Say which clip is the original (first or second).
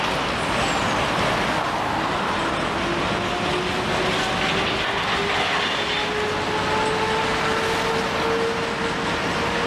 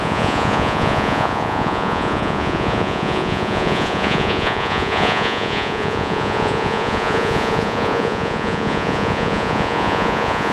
first